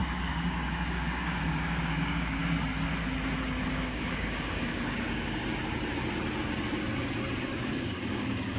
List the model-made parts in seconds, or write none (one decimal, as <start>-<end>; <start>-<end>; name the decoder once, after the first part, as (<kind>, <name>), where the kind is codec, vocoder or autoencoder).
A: 0.0-2.4 (codec, DAC); 3.7-5.4; 7.6-8.6